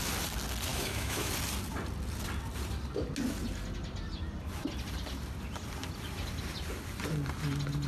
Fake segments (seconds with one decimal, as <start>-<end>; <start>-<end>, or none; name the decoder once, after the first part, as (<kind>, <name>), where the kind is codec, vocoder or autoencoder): 0.7-1.3 (autoencoder, DAC-VAE)